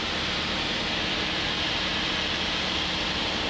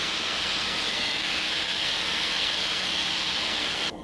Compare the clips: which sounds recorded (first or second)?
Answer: first